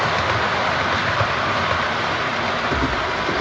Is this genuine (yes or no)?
yes